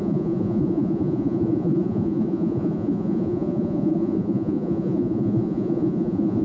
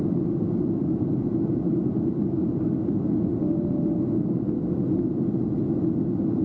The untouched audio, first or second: second